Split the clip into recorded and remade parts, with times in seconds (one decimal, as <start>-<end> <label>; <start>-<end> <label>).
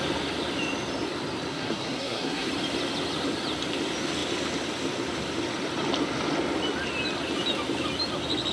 0.0-1.5 recorded; 1.5-2.5 remade; 2.5-8.5 recorded